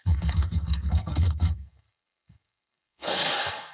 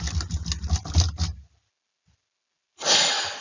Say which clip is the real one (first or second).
second